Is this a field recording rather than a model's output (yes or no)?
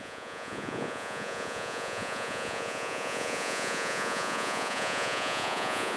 no